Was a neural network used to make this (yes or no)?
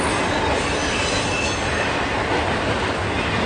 no